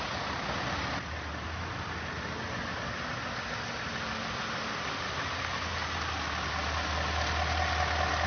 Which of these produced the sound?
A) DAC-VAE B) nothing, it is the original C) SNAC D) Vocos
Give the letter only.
B